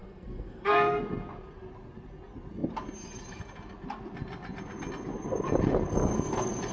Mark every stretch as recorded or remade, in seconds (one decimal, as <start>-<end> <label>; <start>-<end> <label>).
0.0-1.0 remade; 1.0-6.7 recorded